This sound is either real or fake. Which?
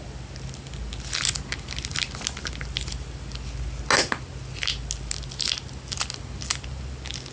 real